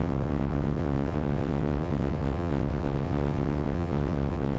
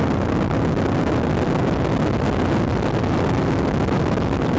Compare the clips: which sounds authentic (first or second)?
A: second